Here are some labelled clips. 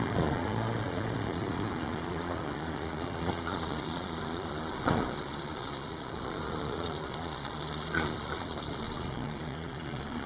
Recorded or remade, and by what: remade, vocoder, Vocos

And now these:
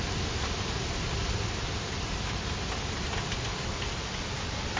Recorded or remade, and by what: recorded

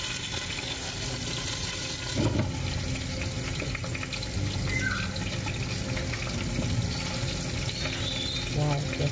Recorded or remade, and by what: recorded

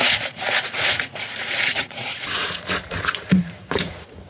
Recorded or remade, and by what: remade, vocoder, Vocos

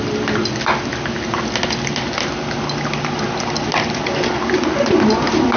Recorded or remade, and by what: recorded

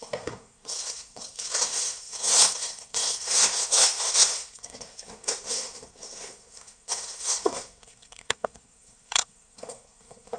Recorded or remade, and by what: remade, codec, SNAC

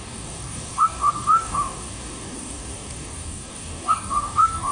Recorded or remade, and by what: remade, codec, DAC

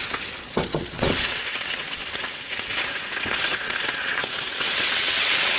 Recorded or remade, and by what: remade, vocoder, WaveNeXt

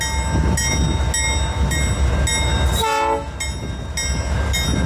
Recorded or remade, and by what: recorded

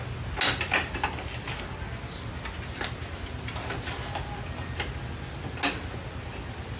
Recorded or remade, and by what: recorded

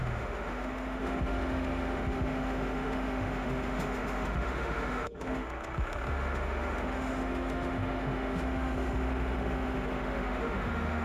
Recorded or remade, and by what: remade, autoencoder, DAC-VAE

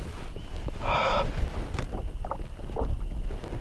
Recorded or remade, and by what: recorded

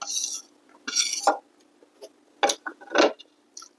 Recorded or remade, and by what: recorded